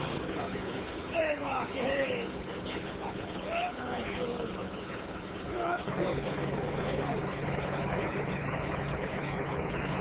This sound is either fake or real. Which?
fake